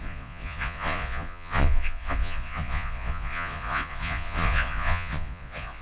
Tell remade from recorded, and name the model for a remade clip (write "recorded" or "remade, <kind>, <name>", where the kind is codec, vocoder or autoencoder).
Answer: remade, vocoder, Vocos